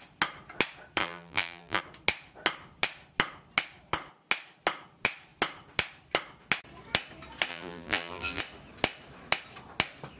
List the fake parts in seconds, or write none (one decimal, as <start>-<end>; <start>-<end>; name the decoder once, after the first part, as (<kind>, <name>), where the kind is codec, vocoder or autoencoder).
1.0-1.8 (vocoder, BigVGAN v2); 7.5-8.4